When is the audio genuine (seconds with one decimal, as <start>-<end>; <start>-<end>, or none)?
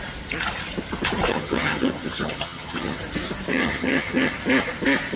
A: 0.0-1.3; 3.0-3.5; 4.3-5.2